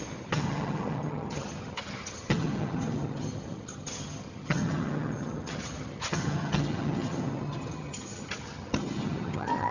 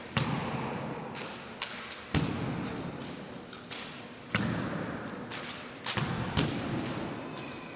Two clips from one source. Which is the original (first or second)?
second